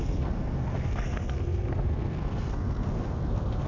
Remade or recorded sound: remade